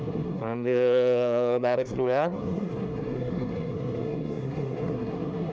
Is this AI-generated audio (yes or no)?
yes